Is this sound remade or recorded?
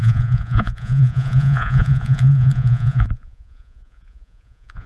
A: remade